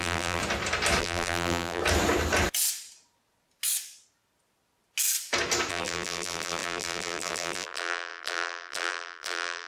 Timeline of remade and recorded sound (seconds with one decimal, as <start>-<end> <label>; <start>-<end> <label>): 0.0-0.4 remade; 0.4-1.0 recorded; 1.0-1.8 remade; 1.8-5.7 recorded; 5.7-9.7 remade